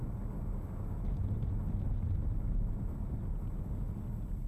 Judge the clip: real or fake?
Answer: real